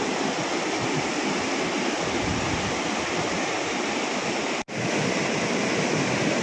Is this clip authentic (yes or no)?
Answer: yes